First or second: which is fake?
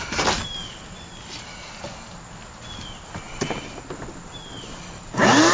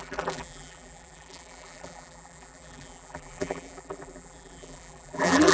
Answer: second